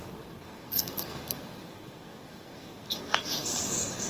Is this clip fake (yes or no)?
yes